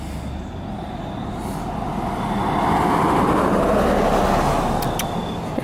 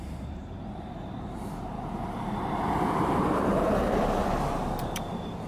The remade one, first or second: second